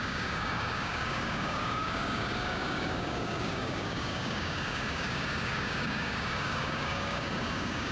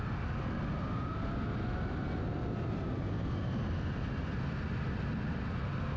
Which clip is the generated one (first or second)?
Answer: first